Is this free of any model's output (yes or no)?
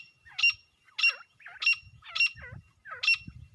yes